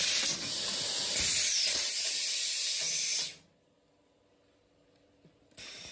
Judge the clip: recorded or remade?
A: recorded